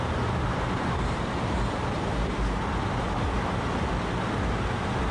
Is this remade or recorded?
remade